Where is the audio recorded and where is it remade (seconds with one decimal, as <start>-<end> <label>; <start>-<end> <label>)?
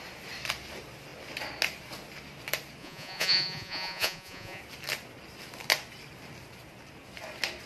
0.0-2.8 recorded; 2.8-4.6 remade; 4.6-7.7 recorded